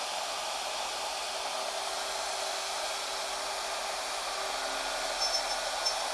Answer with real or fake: real